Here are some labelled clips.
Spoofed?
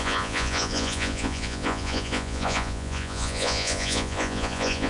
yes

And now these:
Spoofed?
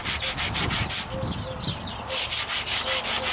no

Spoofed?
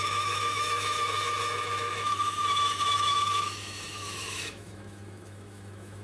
yes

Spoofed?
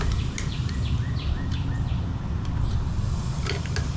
no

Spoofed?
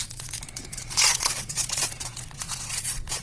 yes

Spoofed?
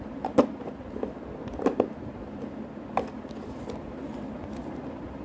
no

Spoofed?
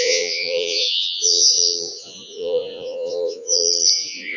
yes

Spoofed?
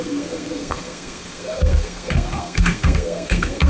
yes